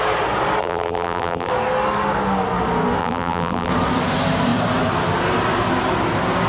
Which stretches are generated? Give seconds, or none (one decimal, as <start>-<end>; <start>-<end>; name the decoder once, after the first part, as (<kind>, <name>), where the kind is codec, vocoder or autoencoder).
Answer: 0.6-1.5 (vocoder, BigVGAN v2); 3.0-3.7